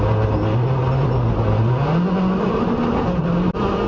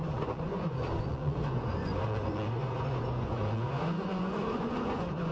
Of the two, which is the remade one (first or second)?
second